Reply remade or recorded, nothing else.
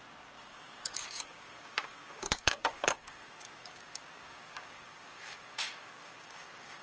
remade